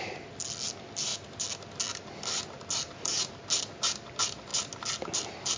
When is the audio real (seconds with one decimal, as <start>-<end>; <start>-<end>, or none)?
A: 0.0-5.6